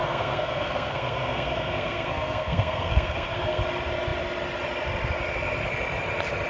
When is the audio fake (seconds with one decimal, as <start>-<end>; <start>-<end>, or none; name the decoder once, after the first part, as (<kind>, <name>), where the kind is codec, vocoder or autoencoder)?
0.0-3.6 (codec, SNAC)